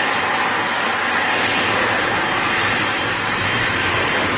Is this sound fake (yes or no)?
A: no